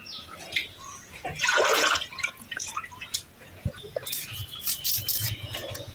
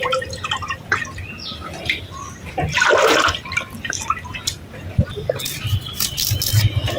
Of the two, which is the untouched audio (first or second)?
second